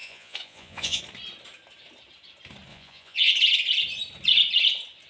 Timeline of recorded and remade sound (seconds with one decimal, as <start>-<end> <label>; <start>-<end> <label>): 0.0-1.0 remade; 1.0-2.7 recorded; 2.7-3.3 remade; 3.3-5.1 recorded